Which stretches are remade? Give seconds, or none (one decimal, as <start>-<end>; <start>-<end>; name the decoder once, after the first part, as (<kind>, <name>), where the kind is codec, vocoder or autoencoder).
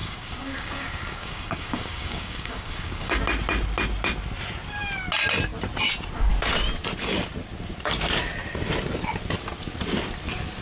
0.0-3.2 (codec, DAC)